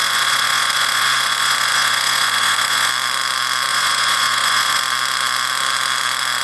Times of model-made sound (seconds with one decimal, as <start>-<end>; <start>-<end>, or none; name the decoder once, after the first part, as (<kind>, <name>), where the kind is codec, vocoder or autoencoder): 0.0-2.9 (vocoder, Vocos); 3.7-4.8